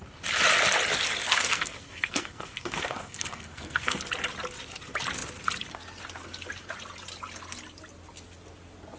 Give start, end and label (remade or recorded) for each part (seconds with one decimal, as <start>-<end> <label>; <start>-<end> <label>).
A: 0.0-1.2 recorded; 1.2-4.0 remade; 4.0-9.0 recorded